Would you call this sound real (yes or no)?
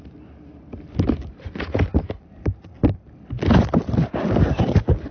yes